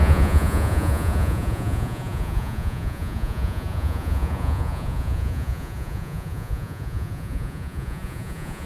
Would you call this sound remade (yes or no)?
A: yes